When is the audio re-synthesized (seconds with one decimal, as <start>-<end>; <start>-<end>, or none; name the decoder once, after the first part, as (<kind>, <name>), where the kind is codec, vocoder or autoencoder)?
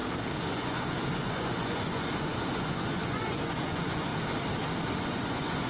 0.5-4.1 (vocoder, Vocos); 4.9-5.7